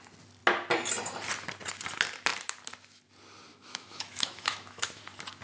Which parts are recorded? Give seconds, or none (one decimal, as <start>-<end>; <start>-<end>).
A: 0.0-3.5; 5.0-5.4

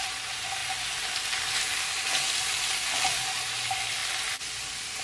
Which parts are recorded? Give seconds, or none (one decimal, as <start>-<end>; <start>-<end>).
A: 0.0-5.0

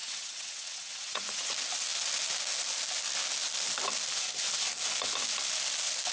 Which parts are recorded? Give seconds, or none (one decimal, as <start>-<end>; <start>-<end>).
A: 1.5-6.1

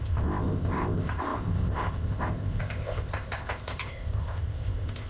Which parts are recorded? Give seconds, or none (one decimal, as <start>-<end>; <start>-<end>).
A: none

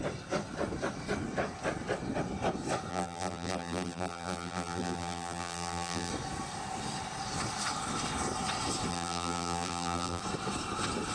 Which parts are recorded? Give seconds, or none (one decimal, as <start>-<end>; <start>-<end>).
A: 0.0-2.9; 6.1-8.9; 10.2-11.1

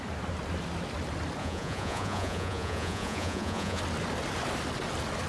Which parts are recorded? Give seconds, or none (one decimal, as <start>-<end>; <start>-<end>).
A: 0.0-1.4; 3.8-5.3